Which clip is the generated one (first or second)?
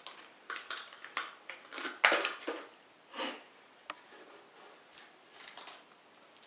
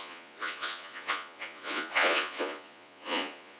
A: second